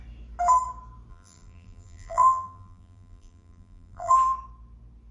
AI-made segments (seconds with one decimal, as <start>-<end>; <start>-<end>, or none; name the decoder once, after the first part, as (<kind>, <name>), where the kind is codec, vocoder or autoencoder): 1.1-4.1 (vocoder, BigVGAN v2)